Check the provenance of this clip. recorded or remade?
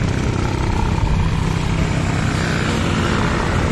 recorded